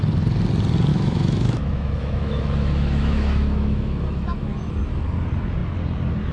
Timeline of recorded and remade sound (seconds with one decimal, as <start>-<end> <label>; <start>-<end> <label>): 0.0-0.9 recorded; 0.9-4.7 remade; 4.7-6.3 recorded

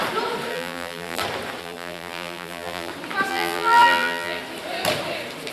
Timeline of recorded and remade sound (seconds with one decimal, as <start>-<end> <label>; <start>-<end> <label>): 0.0-0.5 recorded; 0.5-1.2 remade; 1.2-1.6 recorded; 1.6-2.9 remade; 2.9-3.3 recorded; 3.3-4.4 remade; 4.4-5.5 recorded

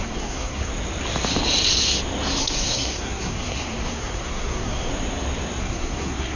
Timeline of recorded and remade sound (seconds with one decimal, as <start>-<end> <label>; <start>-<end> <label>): 0.0-0.7 remade; 0.7-2.4 recorded; 2.4-4.9 remade; 4.9-5.6 recorded; 5.6-6.4 remade

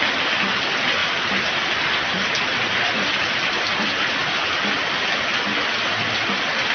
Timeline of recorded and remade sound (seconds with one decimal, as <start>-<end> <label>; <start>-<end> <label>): 0.0-1.0 recorded; 1.0-5.0 remade; 5.0-6.7 recorded

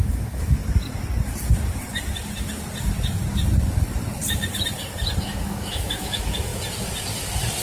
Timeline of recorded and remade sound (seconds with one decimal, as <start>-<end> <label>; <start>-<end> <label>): 0.0-0.6 remade; 0.6-5.2 recorded; 5.2-6.5 remade; 6.5-7.6 recorded

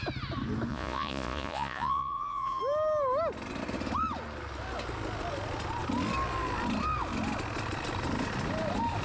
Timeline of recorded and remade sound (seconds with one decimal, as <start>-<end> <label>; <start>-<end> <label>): 0.0-0.7 recorded; 0.7-2.6 remade; 2.6-9.0 recorded

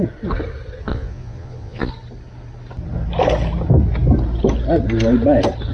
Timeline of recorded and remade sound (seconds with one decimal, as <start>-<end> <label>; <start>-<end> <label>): 0.0-0.9 recorded; 0.9-1.9 remade; 1.9-5.7 recorded

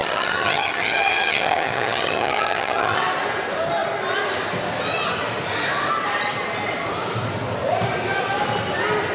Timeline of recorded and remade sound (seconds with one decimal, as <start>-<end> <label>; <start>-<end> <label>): 0.0-3.0 remade; 3.0-9.1 recorded